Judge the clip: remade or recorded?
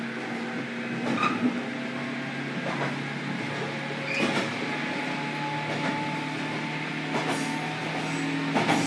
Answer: recorded